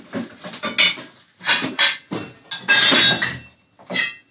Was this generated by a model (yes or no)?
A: no